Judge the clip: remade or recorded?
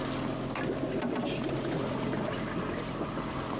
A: recorded